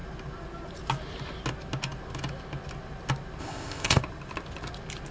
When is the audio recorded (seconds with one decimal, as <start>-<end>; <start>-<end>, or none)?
0.0-3.4; 4.0-5.1